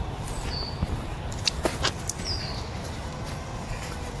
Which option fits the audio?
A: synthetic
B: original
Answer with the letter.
B